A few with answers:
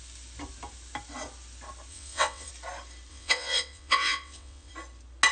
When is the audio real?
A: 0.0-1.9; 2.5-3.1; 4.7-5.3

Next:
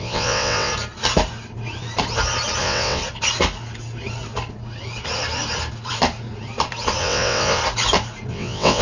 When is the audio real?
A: 0.7-2.6; 3.0-7.0; 7.6-8.3

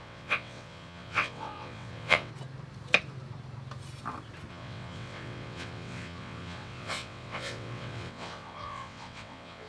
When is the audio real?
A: 2.3-4.5

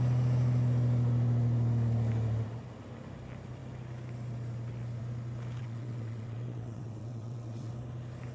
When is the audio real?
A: 0.0-5.6; 7.7-8.3

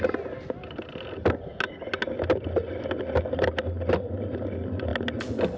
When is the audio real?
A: 0.0-5.6

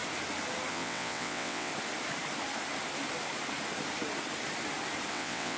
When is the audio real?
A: 0.0-0.7; 1.7-5.1

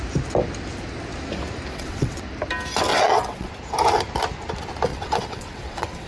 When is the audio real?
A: 0.0-1.7; 2.2-2.9; 3.5-4.9

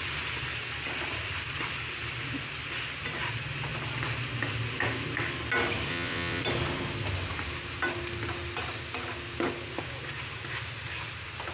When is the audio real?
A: 0.0-5.9; 6.4-11.5